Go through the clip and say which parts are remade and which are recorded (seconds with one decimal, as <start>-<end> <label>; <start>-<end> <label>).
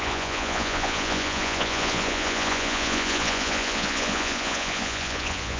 0.0-5.6 remade